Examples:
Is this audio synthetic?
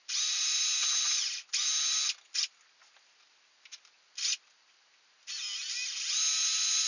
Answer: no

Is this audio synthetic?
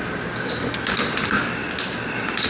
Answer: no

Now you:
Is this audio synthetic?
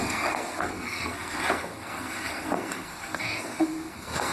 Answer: yes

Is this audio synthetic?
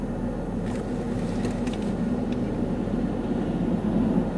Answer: no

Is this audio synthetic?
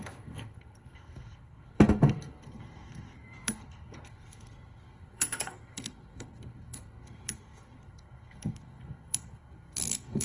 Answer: yes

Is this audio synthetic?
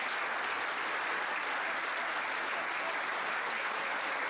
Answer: no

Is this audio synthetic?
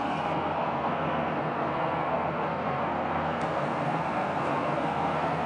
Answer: yes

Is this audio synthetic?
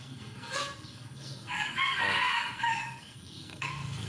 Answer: yes